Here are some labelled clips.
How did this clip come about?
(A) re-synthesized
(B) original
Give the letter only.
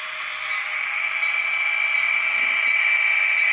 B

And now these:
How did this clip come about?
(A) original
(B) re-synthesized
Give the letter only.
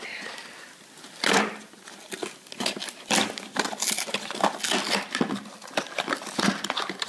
A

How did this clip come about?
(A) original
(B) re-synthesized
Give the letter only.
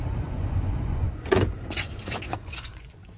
B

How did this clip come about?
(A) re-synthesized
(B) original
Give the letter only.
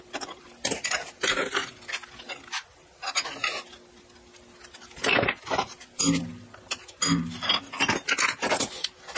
B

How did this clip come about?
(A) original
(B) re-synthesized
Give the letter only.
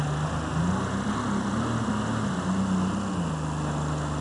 A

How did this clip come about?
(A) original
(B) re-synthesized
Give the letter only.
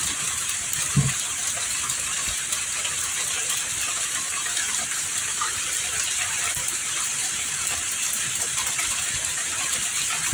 B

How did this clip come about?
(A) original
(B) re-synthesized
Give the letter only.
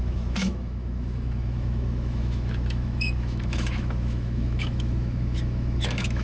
B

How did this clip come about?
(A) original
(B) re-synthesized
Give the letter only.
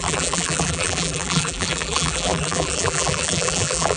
B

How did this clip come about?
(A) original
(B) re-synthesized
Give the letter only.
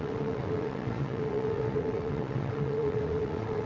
B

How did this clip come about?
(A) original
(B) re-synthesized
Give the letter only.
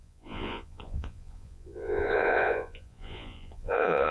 B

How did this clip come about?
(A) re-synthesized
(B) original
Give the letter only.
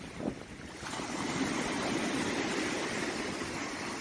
B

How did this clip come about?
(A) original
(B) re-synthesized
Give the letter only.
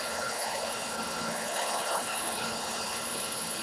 B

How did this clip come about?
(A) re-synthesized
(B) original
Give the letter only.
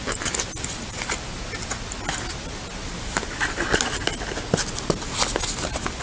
B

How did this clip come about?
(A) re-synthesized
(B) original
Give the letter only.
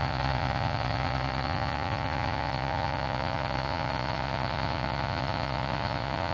A